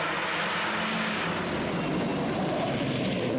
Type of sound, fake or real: real